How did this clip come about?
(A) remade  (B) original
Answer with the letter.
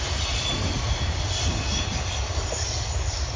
B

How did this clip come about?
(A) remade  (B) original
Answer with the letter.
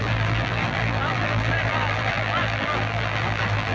A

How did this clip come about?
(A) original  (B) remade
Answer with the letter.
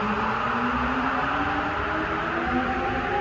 A